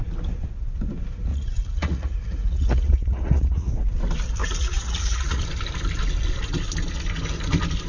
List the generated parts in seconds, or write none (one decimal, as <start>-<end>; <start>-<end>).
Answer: 1.3-3.7; 4.4-5.4